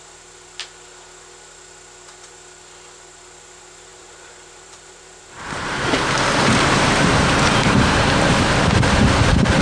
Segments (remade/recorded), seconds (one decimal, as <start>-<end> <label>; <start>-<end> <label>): 0.0-3.9 recorded; 3.9-8.3 remade; 8.3-9.6 recorded